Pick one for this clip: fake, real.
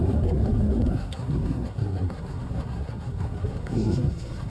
fake